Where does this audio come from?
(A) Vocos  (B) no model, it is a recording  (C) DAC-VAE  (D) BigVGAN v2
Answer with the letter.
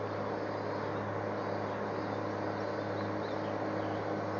B